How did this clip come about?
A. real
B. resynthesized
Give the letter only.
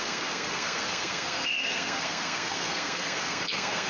B